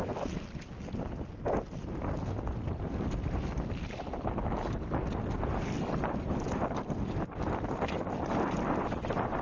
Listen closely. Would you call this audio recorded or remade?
recorded